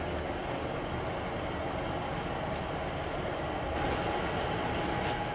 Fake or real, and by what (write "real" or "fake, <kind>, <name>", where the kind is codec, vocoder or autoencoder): real